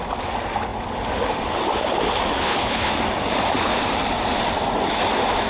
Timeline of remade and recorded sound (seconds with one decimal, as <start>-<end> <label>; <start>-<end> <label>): 0.0-2.4 recorded; 2.4-2.9 remade; 2.9-5.5 recorded